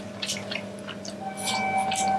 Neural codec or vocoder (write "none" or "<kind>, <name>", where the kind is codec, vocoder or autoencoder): none